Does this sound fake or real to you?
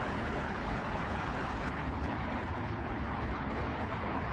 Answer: fake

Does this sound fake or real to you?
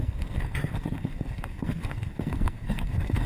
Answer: fake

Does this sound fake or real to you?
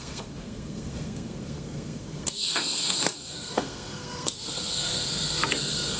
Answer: fake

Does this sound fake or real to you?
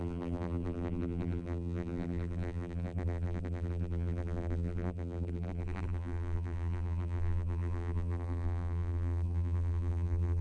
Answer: fake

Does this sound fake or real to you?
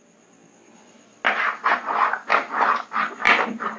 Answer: real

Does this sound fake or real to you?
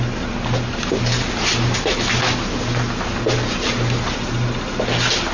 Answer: real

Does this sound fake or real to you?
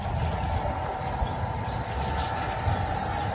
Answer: real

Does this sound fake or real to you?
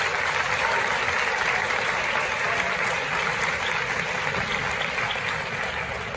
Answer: real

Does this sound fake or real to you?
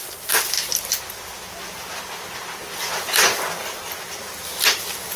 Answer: real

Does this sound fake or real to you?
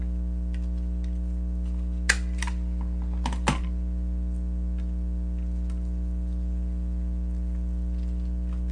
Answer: real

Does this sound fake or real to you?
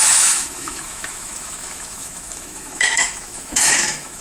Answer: fake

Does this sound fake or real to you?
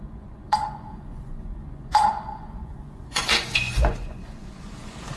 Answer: fake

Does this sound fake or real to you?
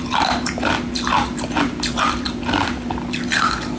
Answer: real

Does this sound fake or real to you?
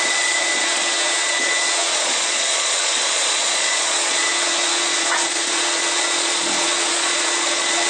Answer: fake